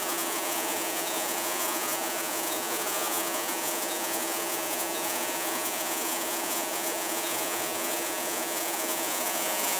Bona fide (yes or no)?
no